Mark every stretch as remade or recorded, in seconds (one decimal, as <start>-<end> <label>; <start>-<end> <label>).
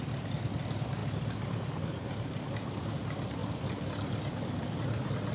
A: 0.0-3.4 recorded; 3.4-4.2 remade; 4.2-5.3 recorded